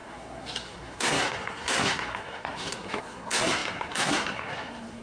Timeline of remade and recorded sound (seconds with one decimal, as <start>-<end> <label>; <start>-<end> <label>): 0.0-5.0 remade